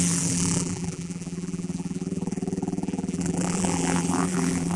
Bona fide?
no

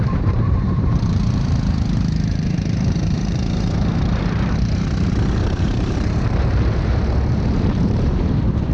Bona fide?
no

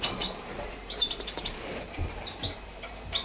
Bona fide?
no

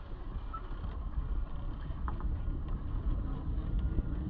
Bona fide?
no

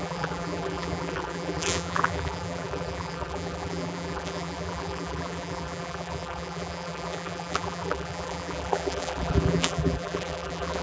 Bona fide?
no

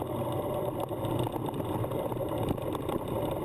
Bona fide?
no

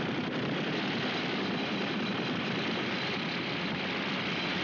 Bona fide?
no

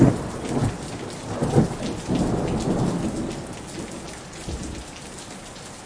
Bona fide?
yes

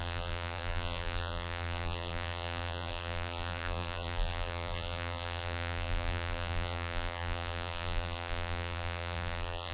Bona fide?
no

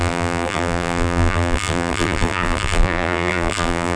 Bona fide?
no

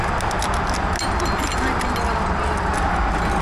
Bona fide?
yes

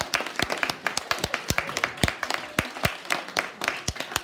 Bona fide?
no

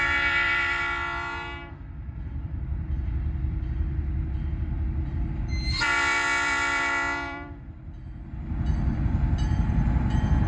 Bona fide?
no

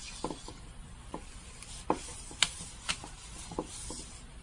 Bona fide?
yes